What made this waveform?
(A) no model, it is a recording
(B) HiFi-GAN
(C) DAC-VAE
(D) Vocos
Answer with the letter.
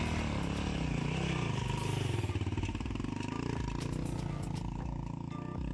A